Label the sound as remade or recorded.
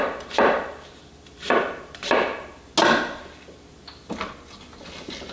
recorded